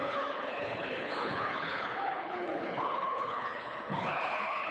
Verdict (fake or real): fake